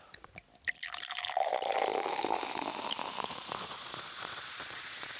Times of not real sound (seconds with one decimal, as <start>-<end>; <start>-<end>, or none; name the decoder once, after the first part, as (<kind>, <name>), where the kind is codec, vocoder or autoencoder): 0.0-0.4 (vocoder, Vocos); 3.3-5.2